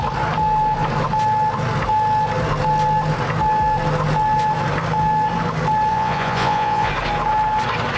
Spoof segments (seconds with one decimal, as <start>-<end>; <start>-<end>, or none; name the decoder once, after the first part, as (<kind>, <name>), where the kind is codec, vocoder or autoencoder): 5.9-6.9 (vocoder, Vocos)